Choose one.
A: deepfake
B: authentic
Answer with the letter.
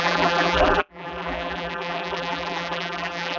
A